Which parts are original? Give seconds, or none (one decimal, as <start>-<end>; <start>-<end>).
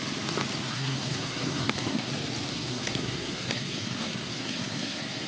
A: 0.0-0.7; 2.1-2.5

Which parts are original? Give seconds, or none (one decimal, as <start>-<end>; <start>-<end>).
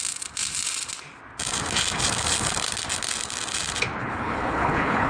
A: 0.0-4.0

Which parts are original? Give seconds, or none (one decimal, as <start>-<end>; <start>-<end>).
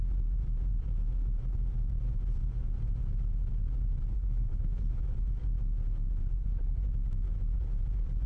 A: 0.0-4.1; 5.0-6.3; 6.8-8.3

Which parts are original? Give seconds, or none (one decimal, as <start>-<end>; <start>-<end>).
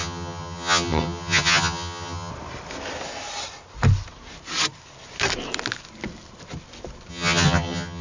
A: 2.3-7.1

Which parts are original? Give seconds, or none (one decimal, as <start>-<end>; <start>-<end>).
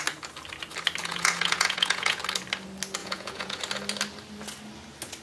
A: 0.0-1.0; 2.2-3.0; 3.6-5.2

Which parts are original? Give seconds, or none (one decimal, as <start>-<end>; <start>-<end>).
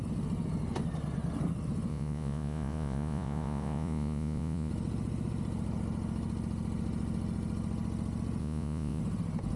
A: 0.0-1.9; 4.7-8.4; 9.0-9.6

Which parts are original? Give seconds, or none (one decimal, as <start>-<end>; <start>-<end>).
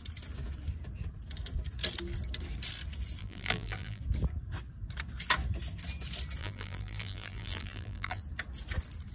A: 0.0-3.2; 4.0-6.4; 8.2-9.1